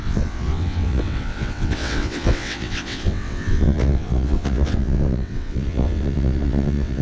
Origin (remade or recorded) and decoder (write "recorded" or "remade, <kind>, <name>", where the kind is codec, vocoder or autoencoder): remade, vocoder, WaveNeXt